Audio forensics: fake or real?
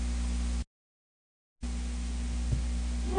real